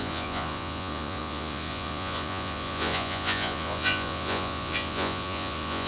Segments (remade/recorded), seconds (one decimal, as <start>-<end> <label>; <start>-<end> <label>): 0.0-5.9 remade